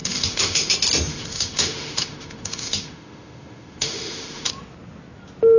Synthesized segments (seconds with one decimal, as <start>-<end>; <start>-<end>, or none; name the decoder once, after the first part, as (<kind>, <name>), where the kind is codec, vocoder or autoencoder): 0.0-0.7 (autoencoder, DAC-VAE); 1.1-4.5